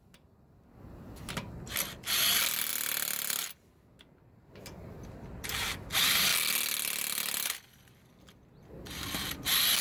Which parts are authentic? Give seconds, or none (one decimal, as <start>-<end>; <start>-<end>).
0.0-9.8